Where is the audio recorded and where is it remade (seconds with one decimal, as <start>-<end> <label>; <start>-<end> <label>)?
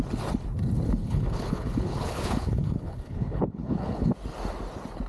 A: 0.0-1.0 recorded; 1.0-4.1 remade; 4.1-5.1 recorded